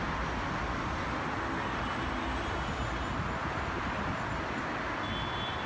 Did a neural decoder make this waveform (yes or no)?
no